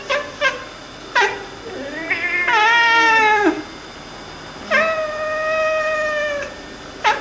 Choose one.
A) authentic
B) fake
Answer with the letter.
A